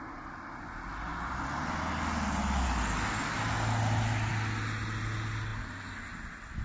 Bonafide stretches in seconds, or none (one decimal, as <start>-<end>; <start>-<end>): 0.0-6.6